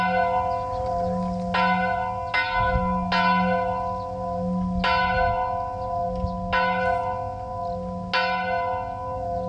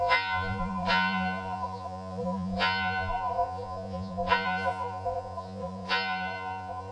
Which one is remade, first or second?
second